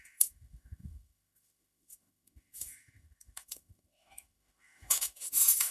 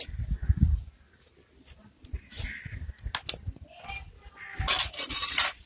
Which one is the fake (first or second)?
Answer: first